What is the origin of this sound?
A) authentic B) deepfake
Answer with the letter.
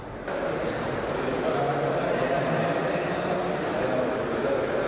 A